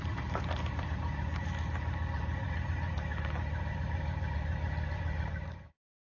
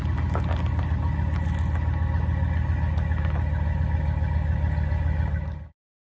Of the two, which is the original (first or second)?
second